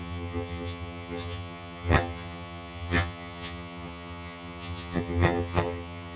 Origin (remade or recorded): remade